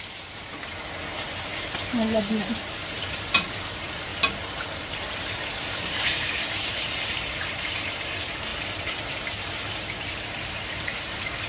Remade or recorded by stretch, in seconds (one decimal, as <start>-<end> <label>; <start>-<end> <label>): 0.0-1.5 remade; 1.5-2.2 recorded; 2.2-4.1 remade; 4.1-4.8 recorded; 4.8-8.5 remade; 8.5-9.1 recorded; 9.1-11.5 remade